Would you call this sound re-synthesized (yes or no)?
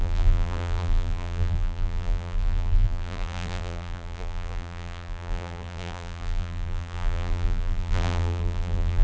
yes